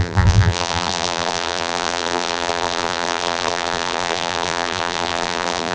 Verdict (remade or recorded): remade